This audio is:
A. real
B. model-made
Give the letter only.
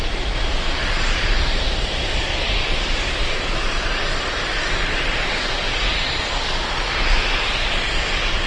A